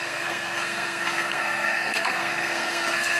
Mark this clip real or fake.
fake